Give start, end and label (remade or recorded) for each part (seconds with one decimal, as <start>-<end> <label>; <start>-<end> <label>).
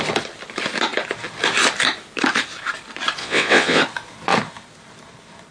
0.0-3.2 recorded; 3.2-3.8 remade; 3.8-5.5 recorded